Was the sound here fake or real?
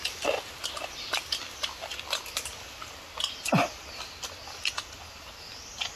real